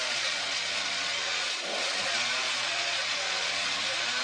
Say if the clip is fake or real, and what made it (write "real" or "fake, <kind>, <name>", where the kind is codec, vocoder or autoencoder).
fake, vocoder, Vocos